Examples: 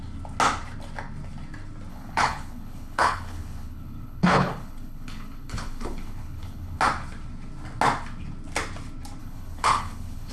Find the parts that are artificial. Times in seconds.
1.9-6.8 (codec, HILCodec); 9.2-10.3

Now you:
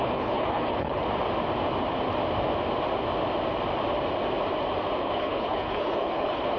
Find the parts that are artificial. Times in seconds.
0.0-1.0 (codec, HILCodec); 5.0-6.6